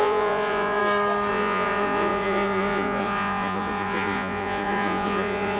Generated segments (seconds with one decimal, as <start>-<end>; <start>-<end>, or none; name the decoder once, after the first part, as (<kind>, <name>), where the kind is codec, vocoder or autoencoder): 0.0-0.8 (vocoder, Vocos); 1.3-5.6